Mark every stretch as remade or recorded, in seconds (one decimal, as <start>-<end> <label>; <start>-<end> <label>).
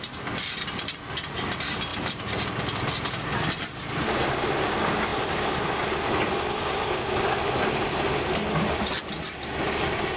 0.0-1.9 remade; 1.9-3.1 recorded; 3.1-10.2 remade